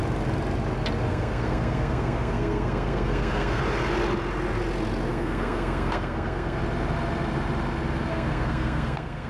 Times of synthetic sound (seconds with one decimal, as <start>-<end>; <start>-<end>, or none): 1.1-3.6; 5.1-6.6; 8.1-9.3

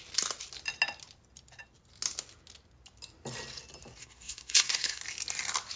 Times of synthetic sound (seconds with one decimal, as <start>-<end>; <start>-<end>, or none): 4.0-5.0